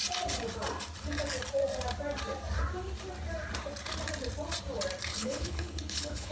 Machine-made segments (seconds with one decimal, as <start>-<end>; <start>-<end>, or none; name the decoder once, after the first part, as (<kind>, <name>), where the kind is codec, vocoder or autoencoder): 5.1-6.3 (codec, HILCodec)